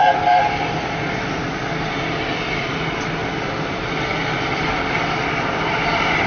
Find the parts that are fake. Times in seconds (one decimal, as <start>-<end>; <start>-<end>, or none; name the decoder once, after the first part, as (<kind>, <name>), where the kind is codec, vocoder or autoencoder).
none